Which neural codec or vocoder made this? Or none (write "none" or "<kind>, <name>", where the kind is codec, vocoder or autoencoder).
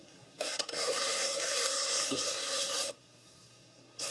codec, SNAC